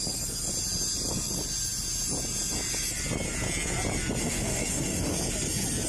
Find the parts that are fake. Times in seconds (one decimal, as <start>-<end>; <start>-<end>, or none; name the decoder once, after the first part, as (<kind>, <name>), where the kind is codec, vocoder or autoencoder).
4.2-5.1 (autoencoder, DAC-VAE)